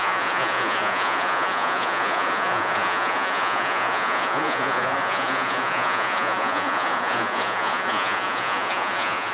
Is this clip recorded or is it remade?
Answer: remade